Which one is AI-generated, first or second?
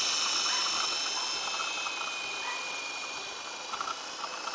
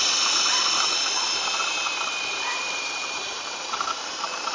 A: second